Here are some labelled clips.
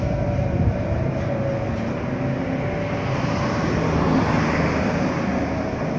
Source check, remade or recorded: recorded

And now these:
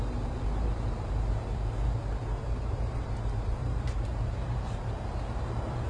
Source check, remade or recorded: remade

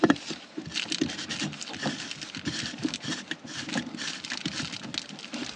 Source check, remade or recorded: recorded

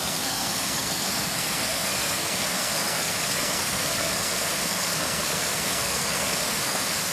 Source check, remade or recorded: remade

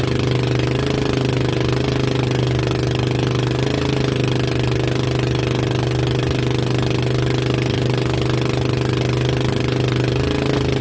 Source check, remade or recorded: recorded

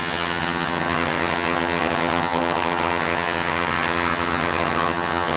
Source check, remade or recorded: remade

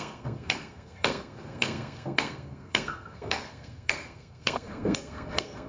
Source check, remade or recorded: remade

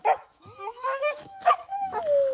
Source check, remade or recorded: remade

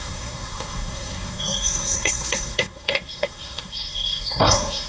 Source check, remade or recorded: remade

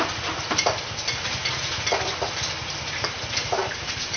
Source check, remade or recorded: recorded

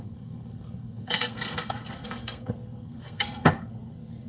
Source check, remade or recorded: remade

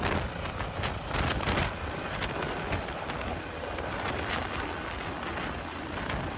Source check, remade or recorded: recorded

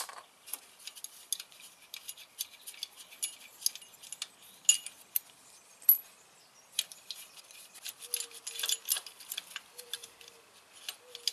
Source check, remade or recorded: recorded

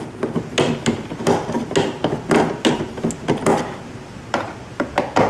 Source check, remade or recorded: recorded